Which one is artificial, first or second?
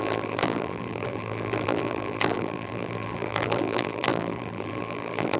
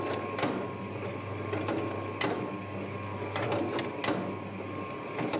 first